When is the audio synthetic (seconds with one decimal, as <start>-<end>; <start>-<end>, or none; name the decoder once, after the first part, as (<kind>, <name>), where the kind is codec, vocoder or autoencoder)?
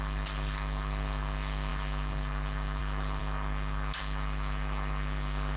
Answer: none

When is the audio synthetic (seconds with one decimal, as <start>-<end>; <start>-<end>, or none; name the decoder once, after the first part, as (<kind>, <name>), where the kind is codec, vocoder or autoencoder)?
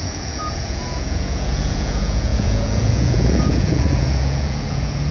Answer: 0.0-5.1 (vocoder, Vocos)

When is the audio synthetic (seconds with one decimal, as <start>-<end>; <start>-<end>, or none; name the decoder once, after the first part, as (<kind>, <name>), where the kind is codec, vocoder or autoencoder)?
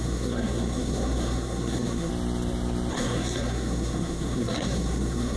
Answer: 0.0-2.1 (codec, SNAC); 2.9-5.4